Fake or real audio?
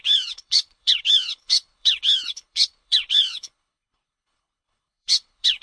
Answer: fake